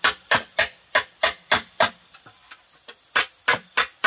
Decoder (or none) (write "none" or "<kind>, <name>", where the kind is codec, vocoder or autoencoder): none